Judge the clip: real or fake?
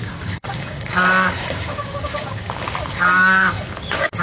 fake